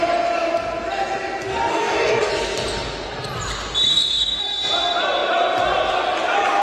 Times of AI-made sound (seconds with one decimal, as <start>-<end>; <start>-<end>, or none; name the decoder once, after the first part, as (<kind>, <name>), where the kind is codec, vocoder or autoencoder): 1.7-2.3 (codec, DAC); 3.9-4.4